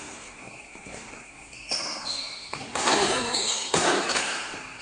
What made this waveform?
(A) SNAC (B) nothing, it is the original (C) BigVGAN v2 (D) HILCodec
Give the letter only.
A